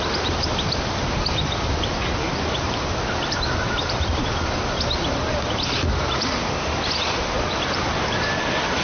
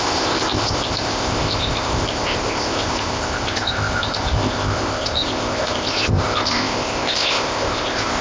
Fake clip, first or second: second